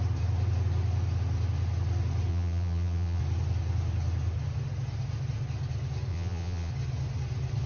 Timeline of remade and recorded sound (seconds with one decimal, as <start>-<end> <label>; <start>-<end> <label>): 0.0-2.3 recorded; 2.3-3.2 remade; 3.2-6.1 recorded; 6.1-6.7 remade; 6.7-7.7 recorded